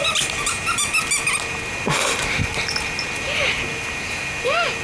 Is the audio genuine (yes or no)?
yes